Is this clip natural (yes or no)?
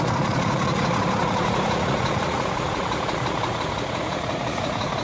no